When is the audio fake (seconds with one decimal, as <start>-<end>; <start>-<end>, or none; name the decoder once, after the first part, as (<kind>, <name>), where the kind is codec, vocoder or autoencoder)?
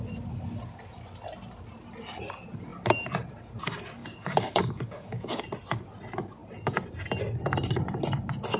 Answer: 4.0-5.4 (codec, DAC)